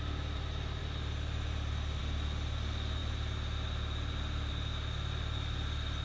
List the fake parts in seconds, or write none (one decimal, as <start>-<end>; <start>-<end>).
none